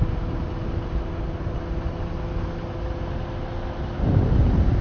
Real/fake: real